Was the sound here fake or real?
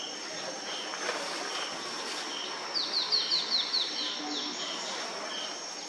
real